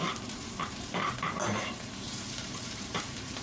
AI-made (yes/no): yes